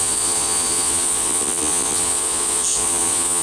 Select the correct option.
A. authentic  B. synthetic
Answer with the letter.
B